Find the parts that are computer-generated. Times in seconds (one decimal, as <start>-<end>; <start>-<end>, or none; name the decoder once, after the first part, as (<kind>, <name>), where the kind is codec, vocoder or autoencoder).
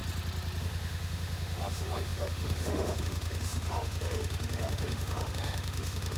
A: 0.6-6.2 (autoencoder, DAC-VAE)